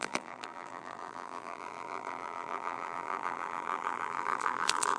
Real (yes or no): no